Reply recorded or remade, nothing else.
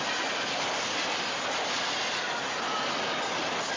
recorded